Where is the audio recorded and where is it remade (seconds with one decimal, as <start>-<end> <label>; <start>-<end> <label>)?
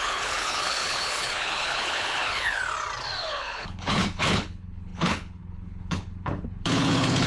0.0-2.6 remade; 2.6-3.2 recorded; 3.2-7.3 remade